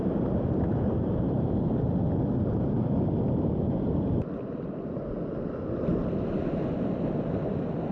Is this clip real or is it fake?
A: real